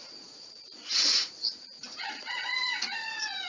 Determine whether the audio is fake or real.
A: fake